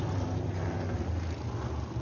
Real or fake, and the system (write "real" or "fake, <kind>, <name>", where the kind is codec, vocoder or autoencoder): real